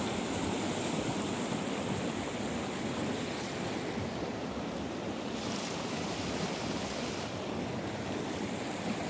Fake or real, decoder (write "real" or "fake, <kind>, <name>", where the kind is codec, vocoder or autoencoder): real